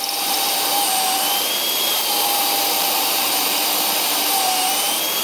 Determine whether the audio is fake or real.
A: fake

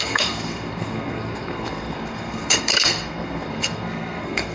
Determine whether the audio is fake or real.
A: fake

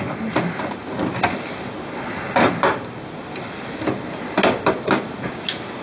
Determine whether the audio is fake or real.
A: real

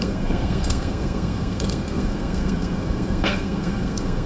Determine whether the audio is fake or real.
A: fake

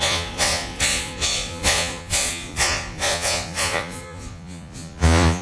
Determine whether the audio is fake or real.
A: fake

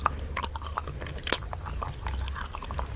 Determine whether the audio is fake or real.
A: real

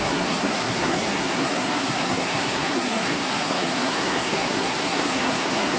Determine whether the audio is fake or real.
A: fake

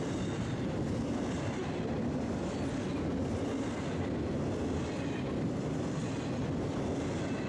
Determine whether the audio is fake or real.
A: real